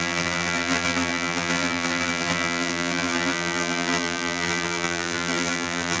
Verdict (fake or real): fake